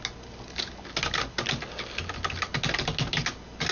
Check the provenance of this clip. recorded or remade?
recorded